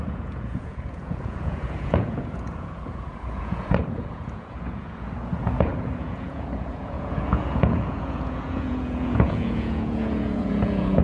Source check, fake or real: fake